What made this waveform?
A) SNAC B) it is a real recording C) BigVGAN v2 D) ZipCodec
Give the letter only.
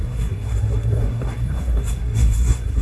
A